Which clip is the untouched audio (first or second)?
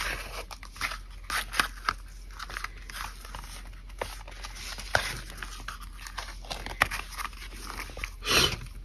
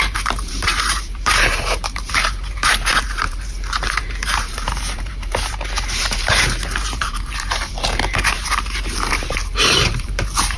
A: first